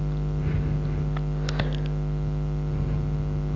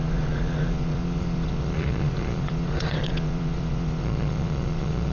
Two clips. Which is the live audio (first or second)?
first